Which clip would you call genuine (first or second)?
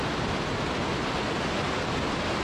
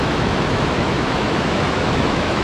first